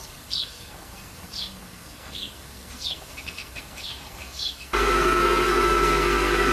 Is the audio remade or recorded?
remade